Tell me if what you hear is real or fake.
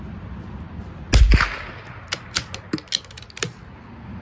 real